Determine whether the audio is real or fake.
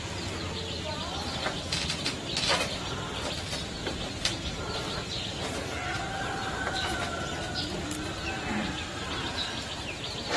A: real